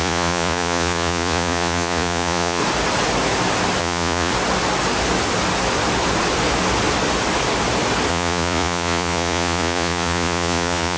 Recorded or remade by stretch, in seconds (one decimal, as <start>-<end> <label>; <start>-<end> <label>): 0.0-2.6 remade; 2.6-3.8 recorded; 3.8-4.3 remade; 4.3-8.1 recorded; 8.1-11.0 remade